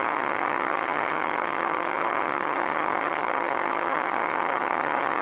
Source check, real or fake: fake